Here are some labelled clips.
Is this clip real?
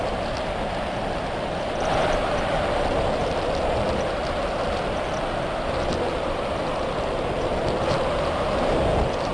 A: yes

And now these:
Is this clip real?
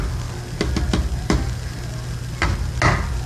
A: yes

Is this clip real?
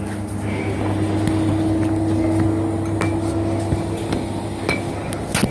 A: yes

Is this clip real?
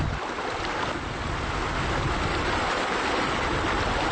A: yes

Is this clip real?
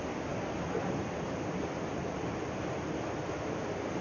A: yes